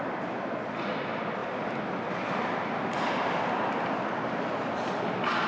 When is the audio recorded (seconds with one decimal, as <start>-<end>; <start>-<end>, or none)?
0.0-5.5